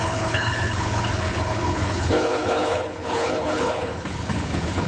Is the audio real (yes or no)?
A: no